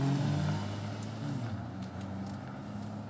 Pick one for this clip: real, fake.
real